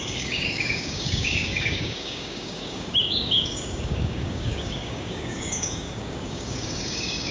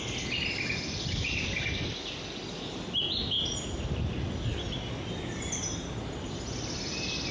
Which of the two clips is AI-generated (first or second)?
first